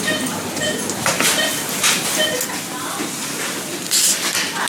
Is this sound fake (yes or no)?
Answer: no